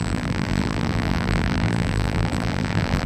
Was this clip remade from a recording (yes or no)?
yes